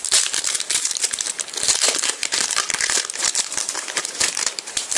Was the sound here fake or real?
fake